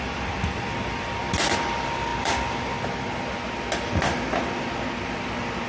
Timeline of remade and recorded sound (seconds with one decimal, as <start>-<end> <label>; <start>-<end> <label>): 0.0-5.7 recorded